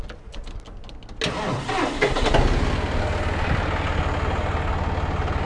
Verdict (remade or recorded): recorded